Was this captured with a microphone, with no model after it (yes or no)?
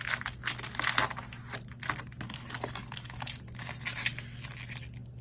yes